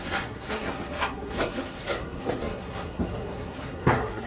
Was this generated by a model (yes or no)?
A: yes